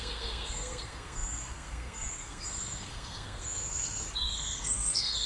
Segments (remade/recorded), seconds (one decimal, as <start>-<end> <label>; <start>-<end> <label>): 0.0-5.3 remade